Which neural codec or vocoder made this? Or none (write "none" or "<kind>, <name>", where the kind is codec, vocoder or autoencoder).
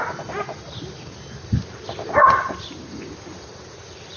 none